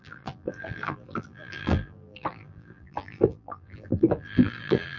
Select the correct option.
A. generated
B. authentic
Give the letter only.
A